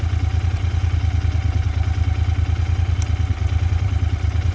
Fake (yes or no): no